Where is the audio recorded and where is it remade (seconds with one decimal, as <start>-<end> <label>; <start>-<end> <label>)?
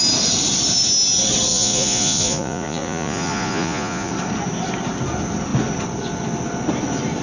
0.0-1.5 recorded; 1.5-4.1 remade; 4.1-7.2 recorded